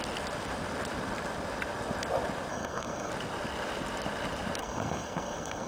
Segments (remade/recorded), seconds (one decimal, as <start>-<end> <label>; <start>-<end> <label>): 0.0-2.5 recorded; 2.5-3.1 remade; 3.1-4.6 recorded; 4.6-5.7 remade